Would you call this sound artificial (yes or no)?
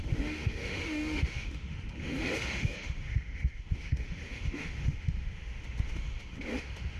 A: yes